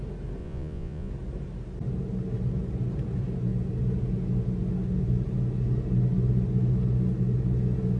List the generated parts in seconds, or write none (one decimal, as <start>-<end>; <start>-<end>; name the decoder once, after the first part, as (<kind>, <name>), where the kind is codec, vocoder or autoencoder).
0.4-1.1 (vocoder, Vocos)